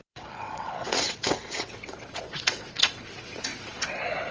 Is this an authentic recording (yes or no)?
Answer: no